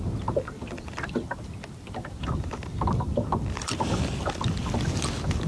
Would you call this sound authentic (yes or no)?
yes